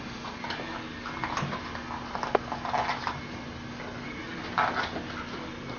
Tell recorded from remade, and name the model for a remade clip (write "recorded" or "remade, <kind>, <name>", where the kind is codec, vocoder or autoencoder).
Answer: recorded